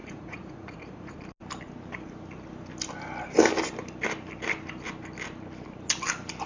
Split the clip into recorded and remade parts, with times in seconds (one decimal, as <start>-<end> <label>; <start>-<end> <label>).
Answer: 0.0-1.2 remade; 1.2-6.5 recorded